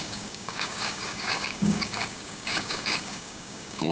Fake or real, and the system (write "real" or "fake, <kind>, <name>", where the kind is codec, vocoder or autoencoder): fake, codec, DAC